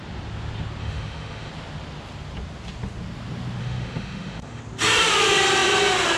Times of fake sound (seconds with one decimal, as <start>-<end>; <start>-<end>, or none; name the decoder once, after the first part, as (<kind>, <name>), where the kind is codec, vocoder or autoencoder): 0.8-1.5 (autoencoder, DAC-VAE); 3.6-4.6